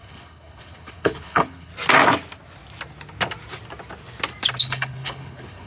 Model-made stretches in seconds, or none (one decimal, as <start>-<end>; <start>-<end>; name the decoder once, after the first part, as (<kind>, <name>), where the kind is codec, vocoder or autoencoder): 0.0-1.7 (codec, HILCodec); 4.6-5.7